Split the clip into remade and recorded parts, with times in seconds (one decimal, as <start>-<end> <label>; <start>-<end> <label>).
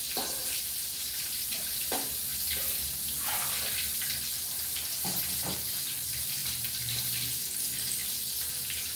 0.0-0.4 recorded; 0.4-1.7 remade; 1.7-6.4 recorded; 6.4-7.0 remade; 7.0-8.0 recorded; 8.0-8.5 remade; 8.5-9.0 recorded